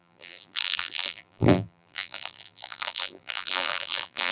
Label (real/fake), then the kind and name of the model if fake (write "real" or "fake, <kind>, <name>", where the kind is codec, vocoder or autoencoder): fake, vocoder, BigVGAN v2